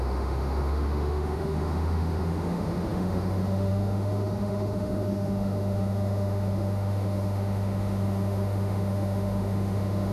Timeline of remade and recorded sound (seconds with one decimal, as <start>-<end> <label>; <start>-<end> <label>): 0.0-10.1 remade